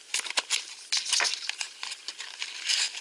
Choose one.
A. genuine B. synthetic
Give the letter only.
A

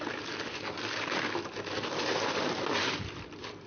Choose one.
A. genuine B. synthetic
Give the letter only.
A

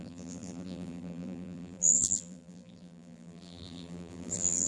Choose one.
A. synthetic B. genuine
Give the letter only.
A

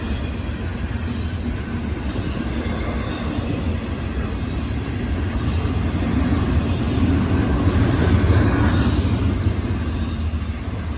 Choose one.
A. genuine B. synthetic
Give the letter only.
A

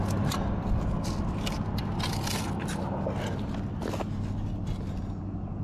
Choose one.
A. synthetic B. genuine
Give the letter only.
B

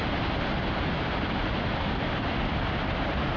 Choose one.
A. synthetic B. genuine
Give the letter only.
B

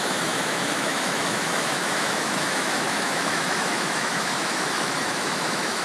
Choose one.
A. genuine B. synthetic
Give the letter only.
B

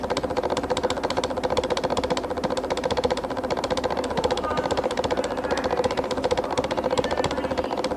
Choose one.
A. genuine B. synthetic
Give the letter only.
A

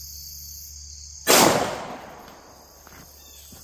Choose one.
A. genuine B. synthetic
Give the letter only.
A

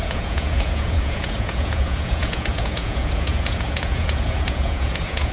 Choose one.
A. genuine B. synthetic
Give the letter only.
B